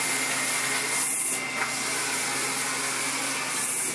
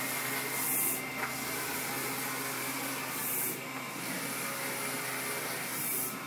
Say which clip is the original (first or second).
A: first